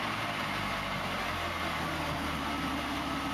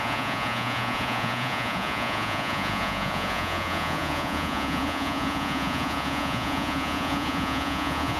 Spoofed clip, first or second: second